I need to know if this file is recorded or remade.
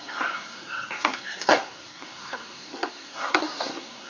remade